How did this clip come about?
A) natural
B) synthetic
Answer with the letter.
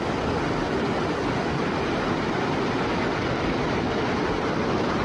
A